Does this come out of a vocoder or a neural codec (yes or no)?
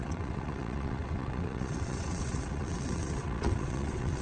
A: yes